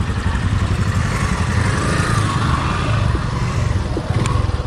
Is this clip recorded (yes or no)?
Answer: yes